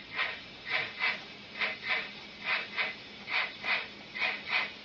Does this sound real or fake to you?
real